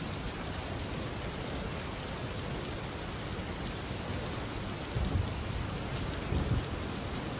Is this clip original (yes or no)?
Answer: yes